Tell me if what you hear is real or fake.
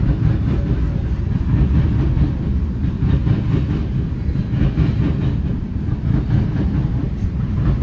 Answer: real